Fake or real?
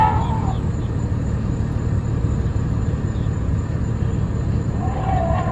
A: real